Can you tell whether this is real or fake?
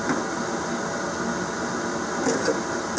real